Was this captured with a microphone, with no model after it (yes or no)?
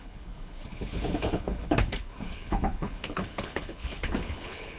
no